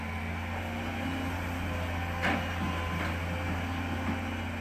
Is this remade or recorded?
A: recorded